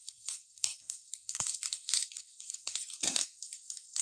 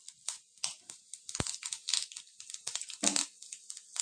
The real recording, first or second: second